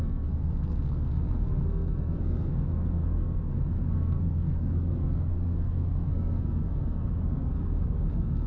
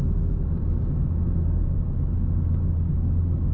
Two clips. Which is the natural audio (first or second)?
second